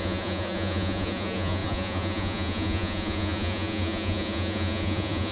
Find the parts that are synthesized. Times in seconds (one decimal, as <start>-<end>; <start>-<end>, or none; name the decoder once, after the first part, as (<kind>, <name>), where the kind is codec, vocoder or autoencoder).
0.0-5.3 (vocoder, Vocos)

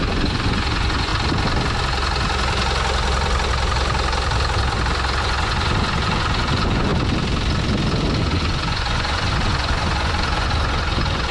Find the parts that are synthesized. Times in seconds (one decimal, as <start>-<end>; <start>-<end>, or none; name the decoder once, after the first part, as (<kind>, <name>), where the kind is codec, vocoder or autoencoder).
0.0-1.1 (vocoder, Vocos); 5.2-6.9; 8.2-11.3

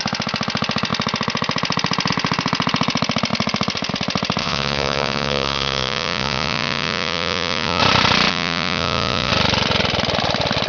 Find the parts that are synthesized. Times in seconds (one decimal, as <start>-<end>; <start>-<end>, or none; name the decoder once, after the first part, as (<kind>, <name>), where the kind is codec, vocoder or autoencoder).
4.4-7.8 (vocoder, Vocos); 8.3-9.3

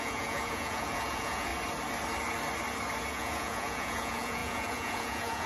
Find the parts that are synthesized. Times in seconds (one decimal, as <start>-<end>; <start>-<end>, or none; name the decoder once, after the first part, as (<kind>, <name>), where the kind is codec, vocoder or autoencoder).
0.0-1.5 (vocoder, Vocos); 3.1-5.5

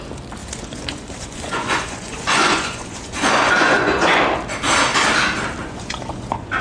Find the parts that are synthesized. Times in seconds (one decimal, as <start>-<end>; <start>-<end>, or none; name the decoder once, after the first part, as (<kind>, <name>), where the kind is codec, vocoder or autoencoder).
0.4-4.2 (vocoder, Vocos); 5.6-6.6

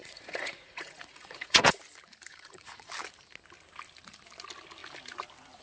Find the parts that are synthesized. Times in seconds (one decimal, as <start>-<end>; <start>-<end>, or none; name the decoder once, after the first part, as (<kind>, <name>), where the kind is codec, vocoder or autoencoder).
0.0-1.8 (vocoder, Vocos); 2.3-2.9